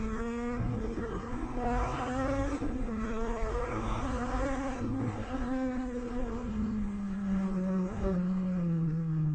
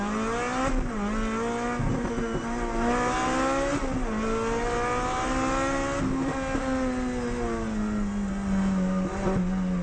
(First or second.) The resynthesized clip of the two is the first